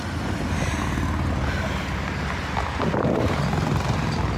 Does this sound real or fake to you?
real